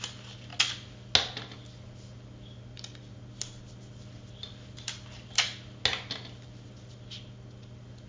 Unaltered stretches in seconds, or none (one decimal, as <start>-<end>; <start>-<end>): 0.0-8.1